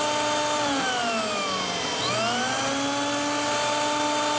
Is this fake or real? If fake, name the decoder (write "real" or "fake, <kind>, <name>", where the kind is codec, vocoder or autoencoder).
real